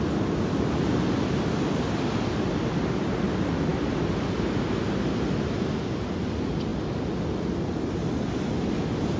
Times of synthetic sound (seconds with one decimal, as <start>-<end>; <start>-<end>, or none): none